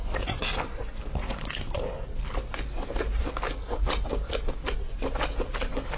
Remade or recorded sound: recorded